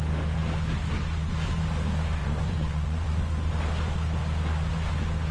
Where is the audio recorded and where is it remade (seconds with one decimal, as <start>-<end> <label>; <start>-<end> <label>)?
0.0-2.2 recorded; 2.2-3.2 remade; 3.2-5.3 recorded